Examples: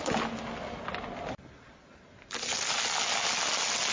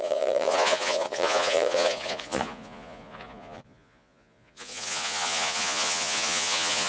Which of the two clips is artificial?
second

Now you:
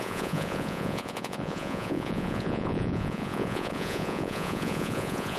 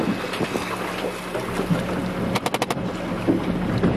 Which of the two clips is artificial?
first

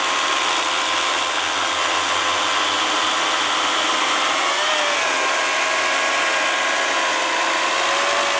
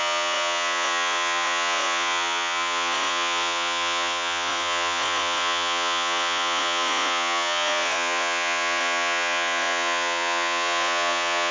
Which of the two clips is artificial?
second